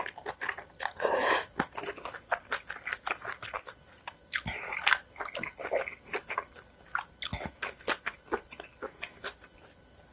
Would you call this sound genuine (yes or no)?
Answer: yes